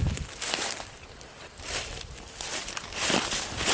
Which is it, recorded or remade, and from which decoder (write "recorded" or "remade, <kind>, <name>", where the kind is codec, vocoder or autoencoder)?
recorded